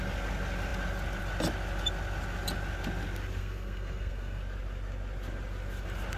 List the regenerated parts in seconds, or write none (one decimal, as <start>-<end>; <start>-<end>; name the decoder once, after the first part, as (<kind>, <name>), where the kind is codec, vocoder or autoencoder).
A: 3.4-4.4 (codec, SNAC)